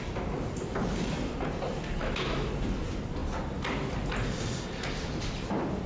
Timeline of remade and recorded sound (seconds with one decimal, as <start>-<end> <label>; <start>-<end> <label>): 0.0-2.0 recorded; 2.0-2.5 remade; 2.5-5.9 recorded